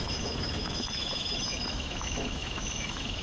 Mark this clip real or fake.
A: fake